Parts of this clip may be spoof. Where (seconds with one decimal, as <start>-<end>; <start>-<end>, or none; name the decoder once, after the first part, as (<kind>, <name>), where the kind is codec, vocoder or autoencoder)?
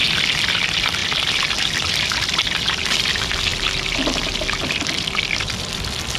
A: none